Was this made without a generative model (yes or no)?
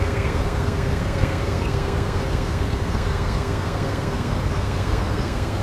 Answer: no